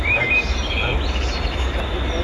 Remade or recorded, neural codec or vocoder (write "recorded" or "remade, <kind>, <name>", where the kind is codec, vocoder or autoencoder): recorded